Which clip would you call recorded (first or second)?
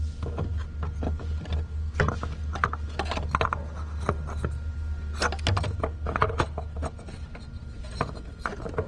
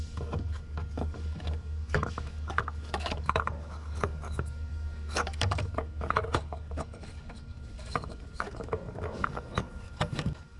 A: first